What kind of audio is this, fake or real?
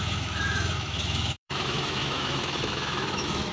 fake